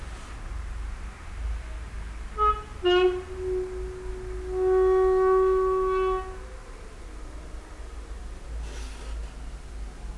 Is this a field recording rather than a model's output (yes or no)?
yes